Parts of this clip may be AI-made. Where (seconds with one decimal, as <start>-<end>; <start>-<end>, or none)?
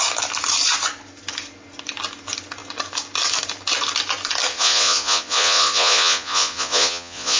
4.5-7.4